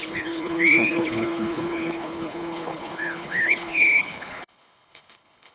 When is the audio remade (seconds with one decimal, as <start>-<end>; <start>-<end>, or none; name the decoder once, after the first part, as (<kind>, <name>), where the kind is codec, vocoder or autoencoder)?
0.0-5.5 (codec, HILCodec)

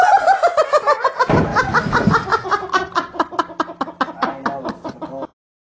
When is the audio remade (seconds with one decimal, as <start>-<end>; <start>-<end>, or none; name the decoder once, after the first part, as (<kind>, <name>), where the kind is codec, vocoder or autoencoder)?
none

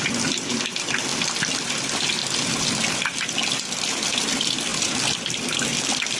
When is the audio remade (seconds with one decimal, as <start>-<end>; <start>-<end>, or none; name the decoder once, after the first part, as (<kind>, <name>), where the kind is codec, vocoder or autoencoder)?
0.0-1.1 (vocoder, BigVGAN v2); 1.6-2.2; 3.5-6.2

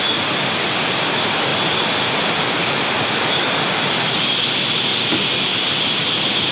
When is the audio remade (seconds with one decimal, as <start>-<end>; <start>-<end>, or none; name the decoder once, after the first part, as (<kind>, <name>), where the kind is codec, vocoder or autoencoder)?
none

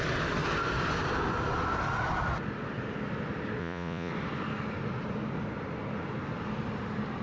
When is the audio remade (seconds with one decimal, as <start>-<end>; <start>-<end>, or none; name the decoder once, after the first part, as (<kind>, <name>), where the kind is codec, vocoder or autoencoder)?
3.6-4.1 (vocoder, Vocos)